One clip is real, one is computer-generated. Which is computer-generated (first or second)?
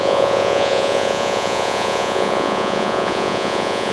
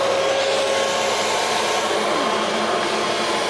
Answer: first